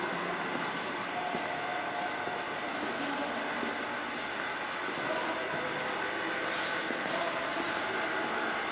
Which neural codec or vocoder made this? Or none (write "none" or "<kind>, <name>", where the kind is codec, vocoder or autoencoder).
none